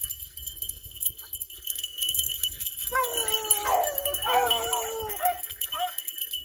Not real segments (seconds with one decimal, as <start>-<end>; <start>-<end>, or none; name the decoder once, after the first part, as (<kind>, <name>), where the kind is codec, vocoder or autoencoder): 0.0-3.1 (codec, SNAC); 4.0-4.6; 5.1-6.4